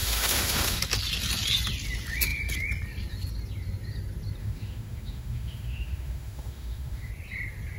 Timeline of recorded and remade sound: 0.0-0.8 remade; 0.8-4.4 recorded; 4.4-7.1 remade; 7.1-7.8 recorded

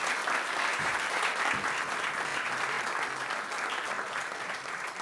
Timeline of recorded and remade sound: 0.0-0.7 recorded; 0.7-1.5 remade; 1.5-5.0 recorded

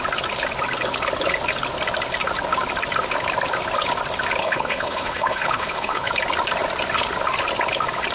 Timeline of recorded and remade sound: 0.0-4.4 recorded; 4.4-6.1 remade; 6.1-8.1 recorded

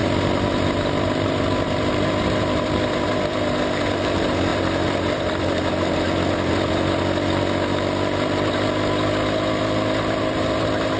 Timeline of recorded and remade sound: 0.0-11.0 recorded

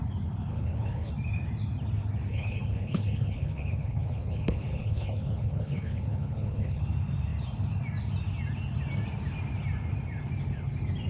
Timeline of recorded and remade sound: 0.0-0.5 recorded; 0.5-1.1 remade; 1.1-2.3 recorded; 2.3-6.8 remade; 6.8-11.1 recorded